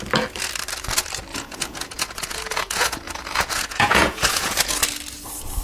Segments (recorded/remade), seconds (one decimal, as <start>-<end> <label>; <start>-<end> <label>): 0.0-1.3 recorded; 1.3-4.7 remade; 4.7-5.6 recorded